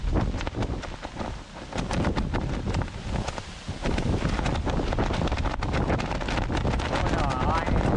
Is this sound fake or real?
real